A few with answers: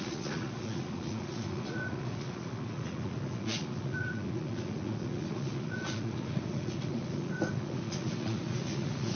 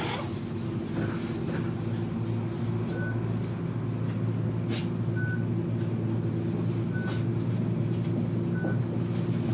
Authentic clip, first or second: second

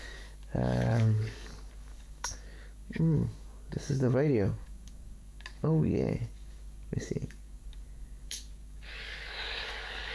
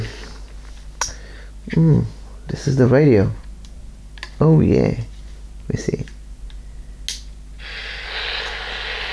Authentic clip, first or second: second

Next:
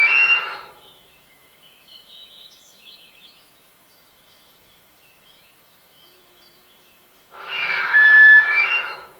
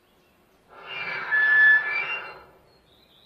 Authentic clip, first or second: second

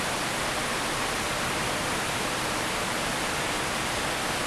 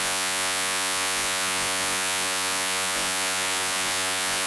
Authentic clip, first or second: first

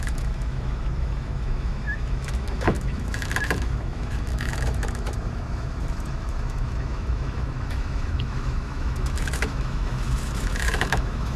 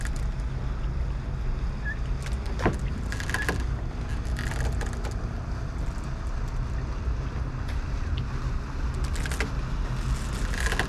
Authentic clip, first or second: second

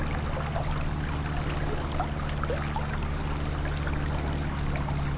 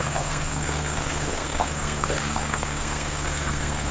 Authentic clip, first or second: first